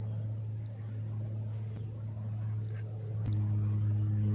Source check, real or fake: real